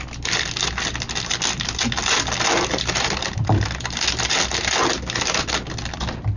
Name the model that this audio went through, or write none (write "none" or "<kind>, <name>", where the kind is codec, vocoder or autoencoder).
none